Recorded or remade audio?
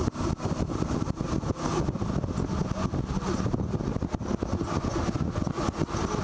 recorded